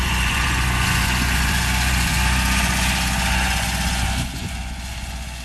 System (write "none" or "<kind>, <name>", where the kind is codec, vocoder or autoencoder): vocoder, Vocos